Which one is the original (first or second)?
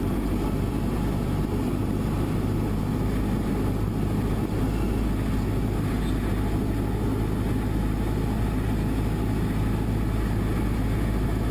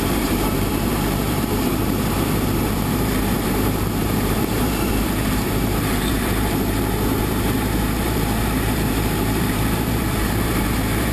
first